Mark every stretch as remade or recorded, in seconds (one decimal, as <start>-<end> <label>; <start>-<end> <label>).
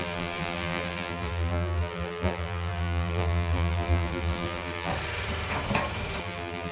0.0-4.9 remade; 4.9-6.2 recorded; 6.2-6.7 remade